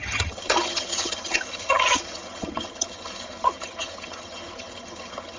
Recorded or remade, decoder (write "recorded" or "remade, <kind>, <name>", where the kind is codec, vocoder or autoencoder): remade, vocoder, HiFi-GAN